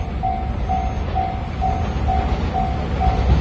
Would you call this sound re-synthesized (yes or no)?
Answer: no